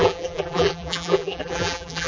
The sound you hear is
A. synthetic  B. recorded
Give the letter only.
A